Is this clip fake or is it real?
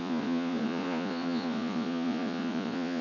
fake